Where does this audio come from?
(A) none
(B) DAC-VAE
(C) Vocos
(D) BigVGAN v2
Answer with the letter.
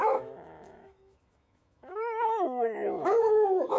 B